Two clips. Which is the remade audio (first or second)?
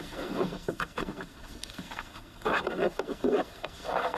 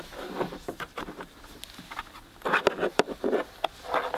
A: first